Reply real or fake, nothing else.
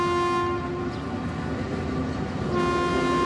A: real